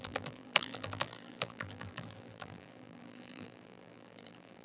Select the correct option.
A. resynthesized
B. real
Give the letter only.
A